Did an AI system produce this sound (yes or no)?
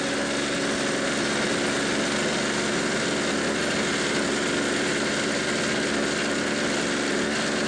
no